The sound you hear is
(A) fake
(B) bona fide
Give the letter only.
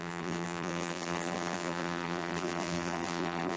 A